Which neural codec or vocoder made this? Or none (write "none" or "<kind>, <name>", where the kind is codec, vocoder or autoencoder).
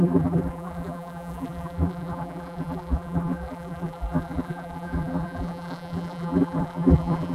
vocoder, BigVGAN v2